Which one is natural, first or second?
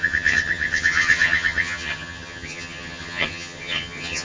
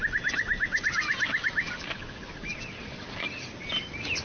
second